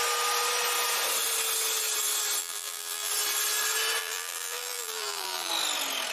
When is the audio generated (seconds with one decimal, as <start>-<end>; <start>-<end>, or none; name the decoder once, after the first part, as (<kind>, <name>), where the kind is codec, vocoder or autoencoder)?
2.4-3.1 (vocoder, BigVGAN v2); 4.0-5.5